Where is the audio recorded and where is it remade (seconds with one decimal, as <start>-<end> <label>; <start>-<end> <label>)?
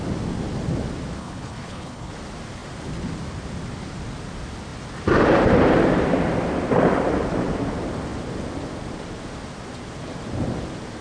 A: 0.0-1.2 recorded; 1.2-2.1 remade; 2.1-11.0 recorded